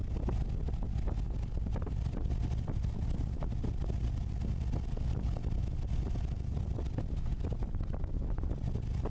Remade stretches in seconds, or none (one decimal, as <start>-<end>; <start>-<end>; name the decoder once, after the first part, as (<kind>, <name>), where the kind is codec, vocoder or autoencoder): 1.9-9.1 (vocoder, BigVGAN v2)